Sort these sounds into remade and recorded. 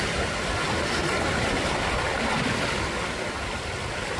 recorded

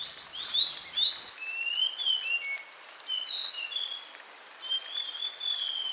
recorded